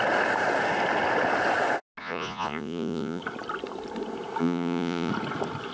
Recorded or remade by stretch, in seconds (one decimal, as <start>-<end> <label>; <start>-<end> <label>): 0.0-2.0 recorded; 2.0-3.2 remade; 3.2-4.4 recorded; 4.4-5.1 remade; 5.1-5.7 recorded